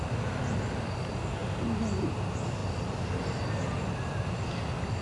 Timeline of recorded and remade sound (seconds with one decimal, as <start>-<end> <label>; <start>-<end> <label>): 0.0-5.0 recorded